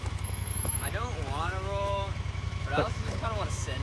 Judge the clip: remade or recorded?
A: remade